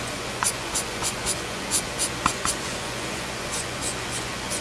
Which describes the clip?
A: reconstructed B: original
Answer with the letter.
A